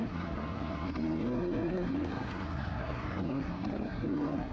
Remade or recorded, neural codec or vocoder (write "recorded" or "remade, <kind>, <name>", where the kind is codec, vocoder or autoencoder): remade, codec, SNAC